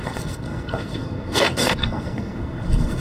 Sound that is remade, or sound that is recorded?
remade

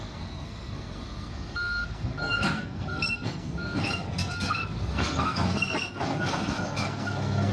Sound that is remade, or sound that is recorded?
remade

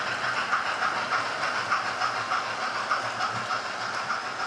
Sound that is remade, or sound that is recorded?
recorded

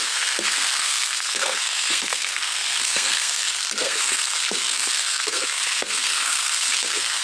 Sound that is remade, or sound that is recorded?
remade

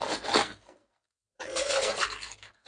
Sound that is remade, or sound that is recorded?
remade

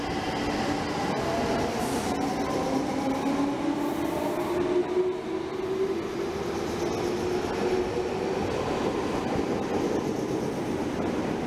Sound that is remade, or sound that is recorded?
recorded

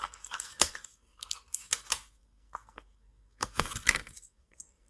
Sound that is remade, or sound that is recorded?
remade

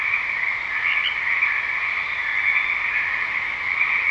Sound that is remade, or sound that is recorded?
recorded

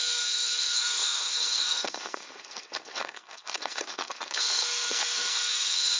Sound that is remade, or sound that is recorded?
remade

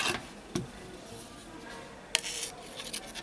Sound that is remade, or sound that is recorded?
recorded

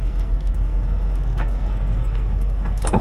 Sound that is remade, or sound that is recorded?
remade